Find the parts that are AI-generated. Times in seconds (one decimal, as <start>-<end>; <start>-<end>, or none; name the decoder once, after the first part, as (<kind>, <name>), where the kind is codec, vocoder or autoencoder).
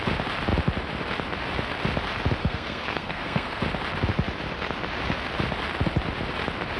2.4-3.6 (codec, SNAC)